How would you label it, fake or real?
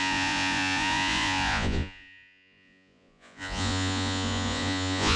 fake